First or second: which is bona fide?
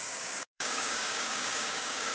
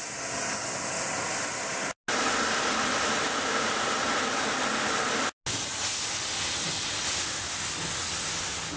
second